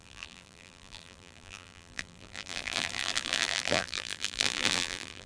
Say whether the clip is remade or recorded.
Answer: remade